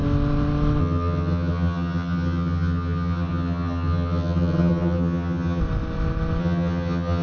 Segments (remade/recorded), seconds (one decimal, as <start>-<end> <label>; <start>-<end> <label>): 0.0-0.8 recorded; 0.8-5.6 remade; 5.6-6.4 recorded; 6.4-7.2 remade